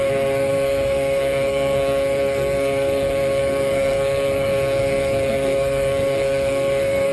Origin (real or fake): fake